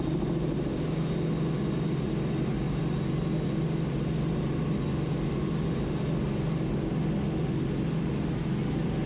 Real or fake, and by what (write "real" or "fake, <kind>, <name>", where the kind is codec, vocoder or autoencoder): real